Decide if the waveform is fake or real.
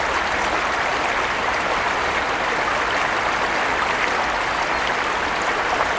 real